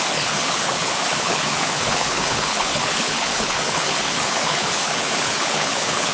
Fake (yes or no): yes